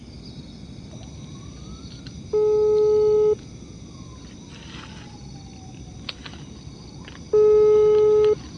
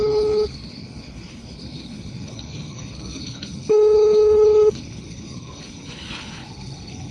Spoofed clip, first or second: second